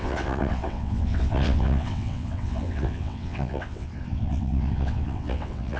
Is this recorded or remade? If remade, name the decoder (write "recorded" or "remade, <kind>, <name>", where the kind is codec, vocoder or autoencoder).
remade, vocoder, WaveNeXt